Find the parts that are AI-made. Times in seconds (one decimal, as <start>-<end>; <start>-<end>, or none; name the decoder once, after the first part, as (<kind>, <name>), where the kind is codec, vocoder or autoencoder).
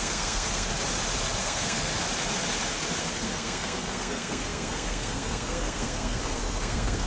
0.0-0.7 (codec, SNAC); 1.4-1.9; 3.0-7.1